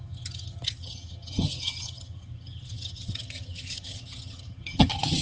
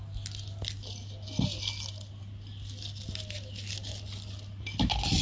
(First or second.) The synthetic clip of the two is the first